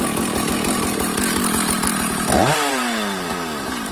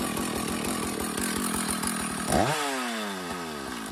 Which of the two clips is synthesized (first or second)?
first